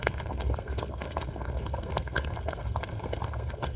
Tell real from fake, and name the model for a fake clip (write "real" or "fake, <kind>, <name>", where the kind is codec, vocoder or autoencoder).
fake, codec, SNAC